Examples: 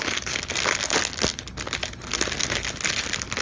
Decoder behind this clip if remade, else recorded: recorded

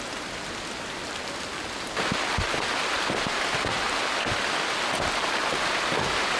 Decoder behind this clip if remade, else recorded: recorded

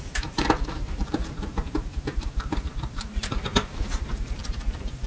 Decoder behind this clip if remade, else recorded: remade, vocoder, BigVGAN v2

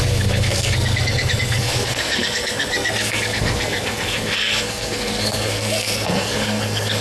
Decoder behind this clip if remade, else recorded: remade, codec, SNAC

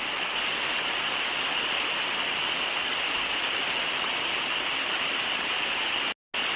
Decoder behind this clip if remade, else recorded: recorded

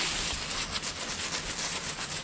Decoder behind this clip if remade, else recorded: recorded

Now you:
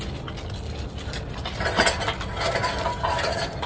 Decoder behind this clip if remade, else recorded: recorded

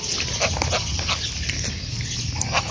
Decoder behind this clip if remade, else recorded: recorded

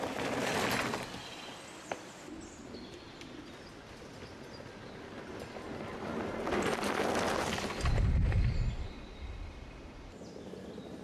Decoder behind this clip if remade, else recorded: recorded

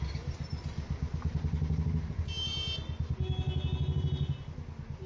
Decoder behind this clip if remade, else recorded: recorded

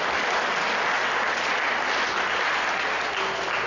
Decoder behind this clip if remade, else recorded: recorded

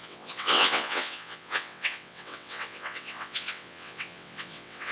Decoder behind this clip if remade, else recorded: remade, vocoder, WaveNeXt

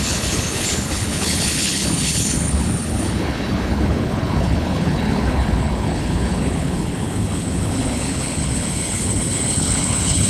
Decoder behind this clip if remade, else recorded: remade, codec, HILCodec